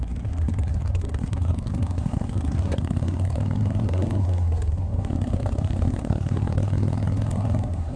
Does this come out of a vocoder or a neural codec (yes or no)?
yes